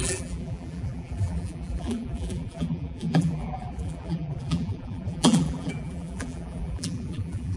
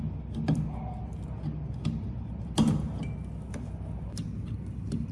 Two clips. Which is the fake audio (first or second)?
first